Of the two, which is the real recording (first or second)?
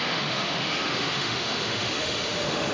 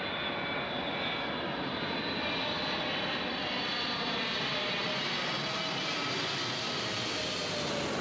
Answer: second